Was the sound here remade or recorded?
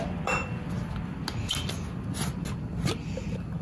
recorded